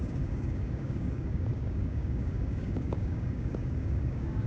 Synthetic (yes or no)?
yes